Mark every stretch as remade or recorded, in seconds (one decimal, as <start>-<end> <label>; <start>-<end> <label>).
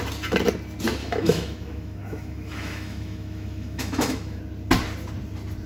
0.0-1.0 recorded; 1.0-4.4 remade; 4.4-5.7 recorded